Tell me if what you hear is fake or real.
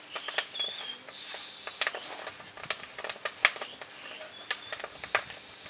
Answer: real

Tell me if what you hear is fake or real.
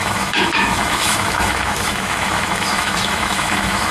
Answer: fake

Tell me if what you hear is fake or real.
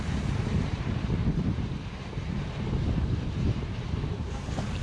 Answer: fake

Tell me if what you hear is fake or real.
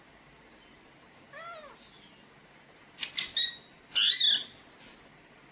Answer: real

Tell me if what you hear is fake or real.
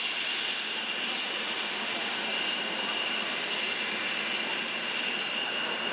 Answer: real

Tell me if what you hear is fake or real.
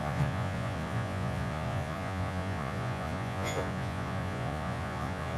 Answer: fake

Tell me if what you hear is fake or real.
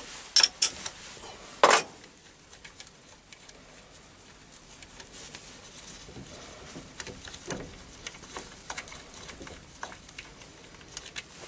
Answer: real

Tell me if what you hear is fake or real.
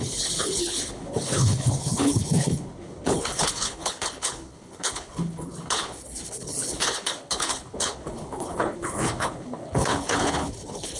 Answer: fake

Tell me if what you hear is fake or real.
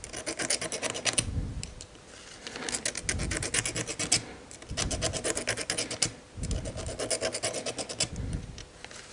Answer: real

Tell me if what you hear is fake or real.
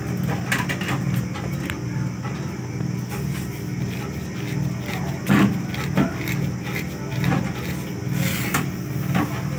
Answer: real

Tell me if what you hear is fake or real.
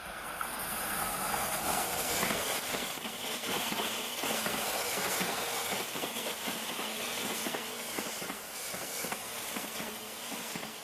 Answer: fake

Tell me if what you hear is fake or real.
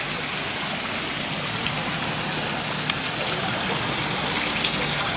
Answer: real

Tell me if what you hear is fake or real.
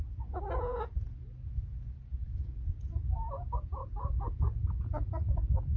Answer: fake